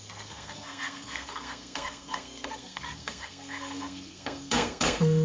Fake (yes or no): yes